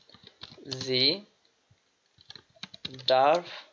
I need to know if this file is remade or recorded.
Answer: recorded